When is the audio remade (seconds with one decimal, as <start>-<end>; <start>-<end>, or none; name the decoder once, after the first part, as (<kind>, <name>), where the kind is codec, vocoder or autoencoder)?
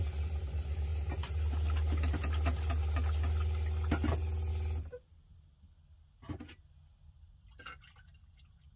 none